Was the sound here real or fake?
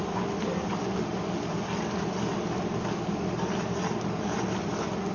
real